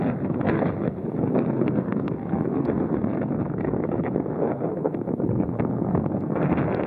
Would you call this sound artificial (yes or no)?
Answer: yes